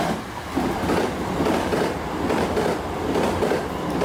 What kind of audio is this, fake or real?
real